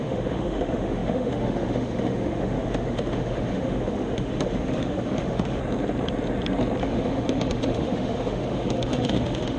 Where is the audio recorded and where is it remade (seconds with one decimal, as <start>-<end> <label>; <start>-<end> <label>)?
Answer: 0.0-5.6 remade; 5.6-6.8 recorded; 6.8-9.6 remade